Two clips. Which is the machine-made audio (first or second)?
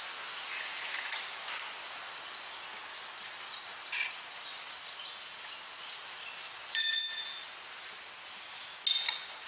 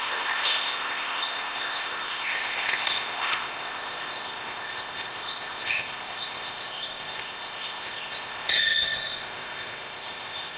second